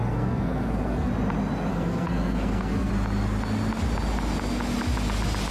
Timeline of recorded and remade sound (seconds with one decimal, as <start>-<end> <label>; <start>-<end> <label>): 0.0-1.1 remade; 1.1-1.7 recorded; 1.7-2.9 remade; 2.9-5.5 recorded